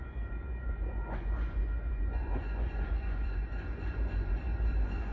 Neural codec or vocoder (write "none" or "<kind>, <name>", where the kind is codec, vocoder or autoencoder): vocoder, Vocos